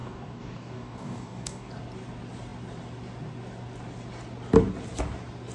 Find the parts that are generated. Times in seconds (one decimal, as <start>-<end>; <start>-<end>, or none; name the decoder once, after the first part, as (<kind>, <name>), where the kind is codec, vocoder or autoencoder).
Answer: 0.0-1.7 (codec, DAC)